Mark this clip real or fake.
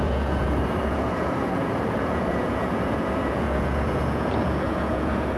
fake